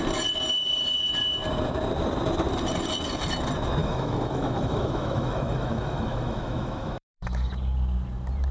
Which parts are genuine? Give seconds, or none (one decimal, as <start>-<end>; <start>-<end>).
0.0-3.8; 7.5-8.5